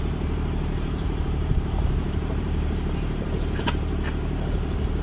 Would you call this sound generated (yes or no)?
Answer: yes